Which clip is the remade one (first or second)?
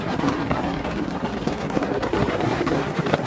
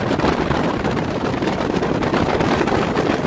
first